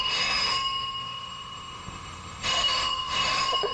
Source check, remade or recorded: remade